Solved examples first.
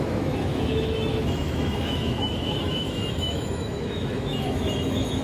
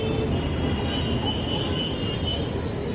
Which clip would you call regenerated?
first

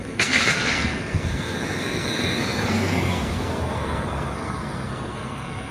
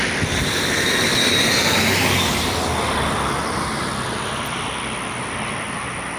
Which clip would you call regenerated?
first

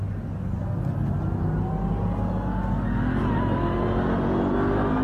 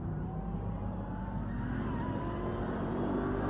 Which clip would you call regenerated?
second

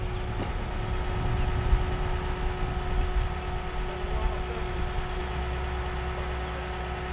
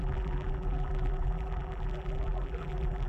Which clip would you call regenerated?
second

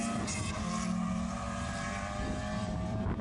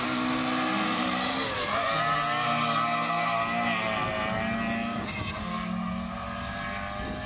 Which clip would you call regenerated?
first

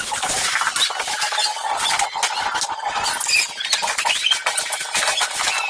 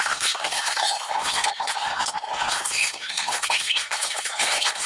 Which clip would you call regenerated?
second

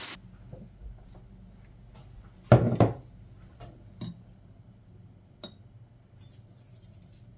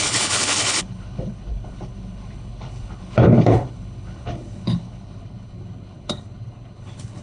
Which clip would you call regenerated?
second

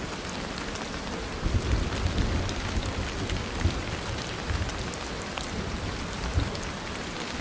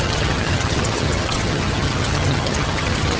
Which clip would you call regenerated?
second